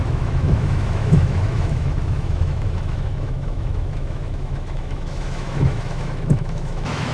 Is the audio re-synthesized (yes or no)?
yes